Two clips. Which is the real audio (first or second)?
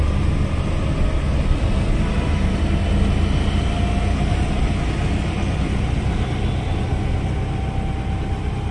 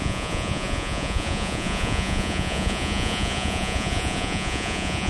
first